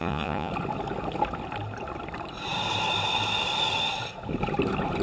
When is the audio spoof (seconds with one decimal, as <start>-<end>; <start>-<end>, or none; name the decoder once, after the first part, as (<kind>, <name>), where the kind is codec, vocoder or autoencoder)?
0.0-0.5 (vocoder, Vocos)